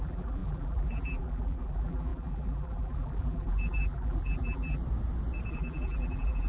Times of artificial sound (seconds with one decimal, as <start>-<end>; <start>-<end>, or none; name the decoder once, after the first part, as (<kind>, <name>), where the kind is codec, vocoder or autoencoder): 0.0-4.8 (vocoder, BigVGAN v2); 5.5-6.5